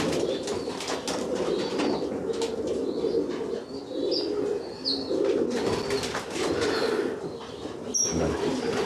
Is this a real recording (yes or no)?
yes